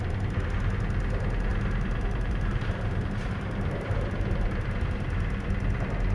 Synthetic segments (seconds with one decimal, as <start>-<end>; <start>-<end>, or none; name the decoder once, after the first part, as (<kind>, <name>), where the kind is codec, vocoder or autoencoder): 1.5-5.0 (vocoder, BigVGAN v2)

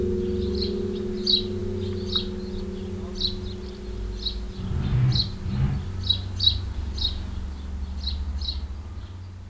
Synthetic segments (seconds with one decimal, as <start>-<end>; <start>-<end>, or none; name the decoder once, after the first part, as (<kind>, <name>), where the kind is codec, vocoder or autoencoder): none

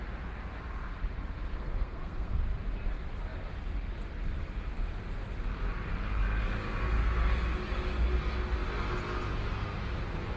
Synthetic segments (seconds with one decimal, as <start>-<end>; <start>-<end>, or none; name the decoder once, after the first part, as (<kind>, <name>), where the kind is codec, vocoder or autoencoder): 1.5-2.4 (codec, SNAC)

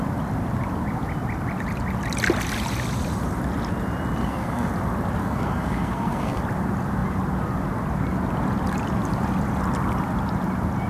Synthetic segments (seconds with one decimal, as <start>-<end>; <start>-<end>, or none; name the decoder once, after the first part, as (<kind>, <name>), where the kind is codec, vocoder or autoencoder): 4.2-4.7 (codec, SNAC); 5.2-6.4